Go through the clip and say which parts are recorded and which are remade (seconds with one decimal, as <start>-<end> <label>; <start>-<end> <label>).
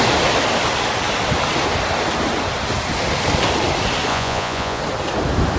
0.0-4.1 recorded; 4.1-4.8 remade; 4.8-5.6 recorded